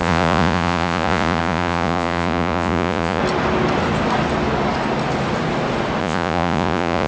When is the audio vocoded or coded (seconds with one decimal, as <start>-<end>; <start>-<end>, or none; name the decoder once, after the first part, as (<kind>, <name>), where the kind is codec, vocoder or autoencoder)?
0.0-3.2 (vocoder, Vocos); 6.0-7.1